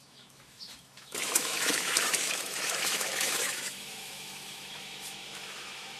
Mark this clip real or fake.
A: fake